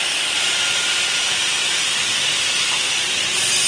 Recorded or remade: recorded